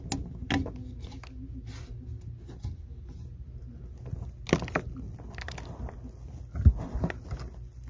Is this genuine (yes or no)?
yes